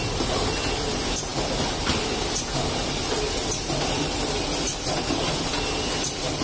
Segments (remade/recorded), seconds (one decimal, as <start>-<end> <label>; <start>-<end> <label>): 0.0-6.4 recorded